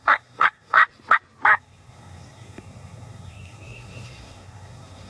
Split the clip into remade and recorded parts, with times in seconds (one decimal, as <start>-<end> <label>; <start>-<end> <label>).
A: 0.0-0.8 remade; 0.8-1.5 recorded; 1.5-5.1 remade